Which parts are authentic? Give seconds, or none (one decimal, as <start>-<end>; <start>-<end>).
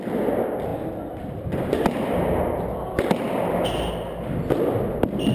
0.0-5.3